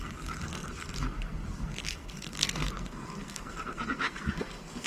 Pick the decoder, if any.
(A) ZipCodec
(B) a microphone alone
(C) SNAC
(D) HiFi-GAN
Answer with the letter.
C